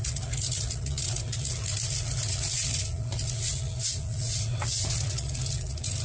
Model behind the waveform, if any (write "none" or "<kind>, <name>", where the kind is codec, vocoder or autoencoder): vocoder, Vocos